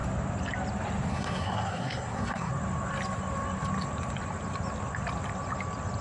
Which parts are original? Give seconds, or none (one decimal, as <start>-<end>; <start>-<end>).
0.0-1.1; 2.5-6.0